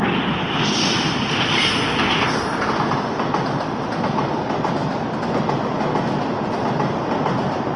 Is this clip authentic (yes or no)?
yes